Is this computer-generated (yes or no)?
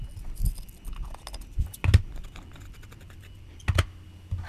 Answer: no